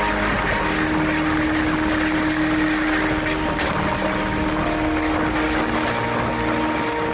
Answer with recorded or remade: recorded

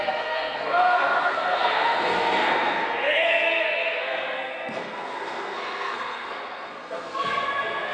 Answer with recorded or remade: remade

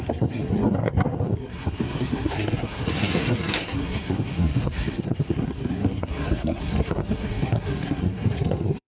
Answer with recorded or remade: remade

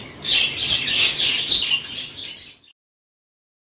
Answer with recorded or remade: recorded